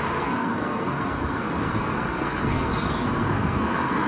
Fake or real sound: fake